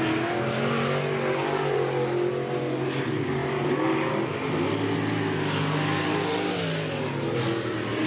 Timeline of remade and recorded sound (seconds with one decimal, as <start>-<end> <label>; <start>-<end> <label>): 0.0-8.1 recorded